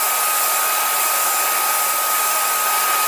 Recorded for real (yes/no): yes